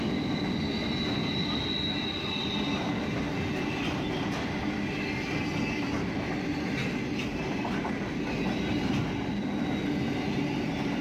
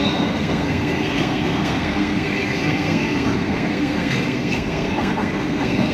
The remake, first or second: second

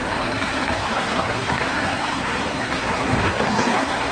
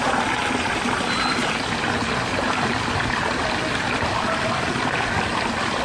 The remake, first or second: first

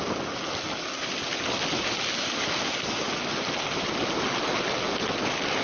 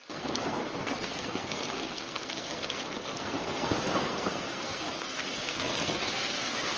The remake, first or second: second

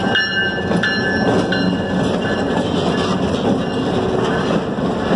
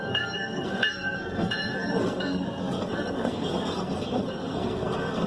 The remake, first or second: second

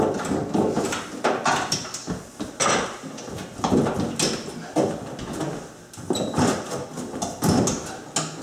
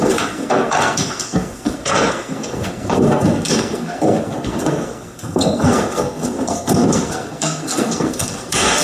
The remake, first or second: second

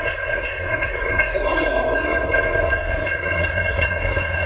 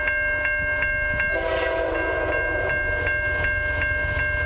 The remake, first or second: first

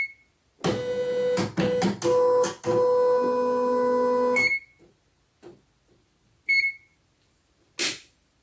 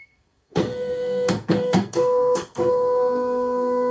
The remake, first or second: second